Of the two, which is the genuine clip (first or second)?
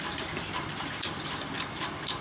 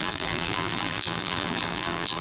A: first